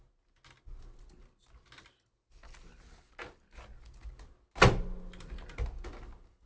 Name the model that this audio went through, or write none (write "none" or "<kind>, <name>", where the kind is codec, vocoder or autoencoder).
none